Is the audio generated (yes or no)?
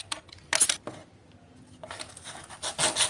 no